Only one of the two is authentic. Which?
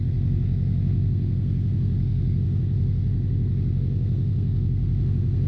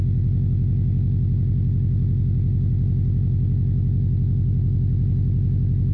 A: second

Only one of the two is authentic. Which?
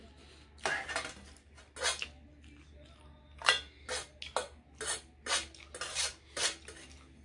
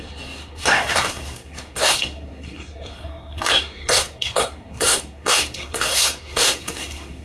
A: first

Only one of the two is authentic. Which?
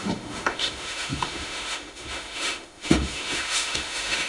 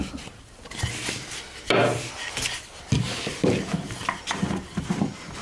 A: second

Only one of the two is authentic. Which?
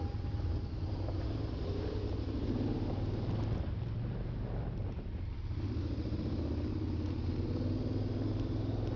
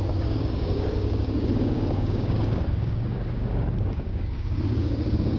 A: first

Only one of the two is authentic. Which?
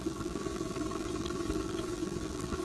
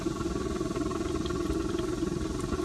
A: second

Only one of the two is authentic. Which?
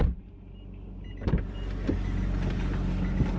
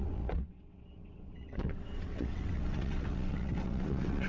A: first